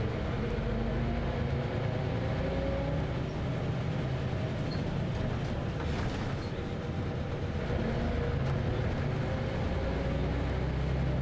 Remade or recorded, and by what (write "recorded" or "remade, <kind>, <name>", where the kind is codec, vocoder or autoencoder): recorded